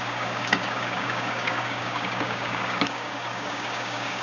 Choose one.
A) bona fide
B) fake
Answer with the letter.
B